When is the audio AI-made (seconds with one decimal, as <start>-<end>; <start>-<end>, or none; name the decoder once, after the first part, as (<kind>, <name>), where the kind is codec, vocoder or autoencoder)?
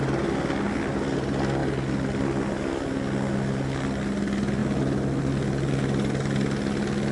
none